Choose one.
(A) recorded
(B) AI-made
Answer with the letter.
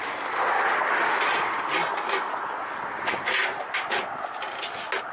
A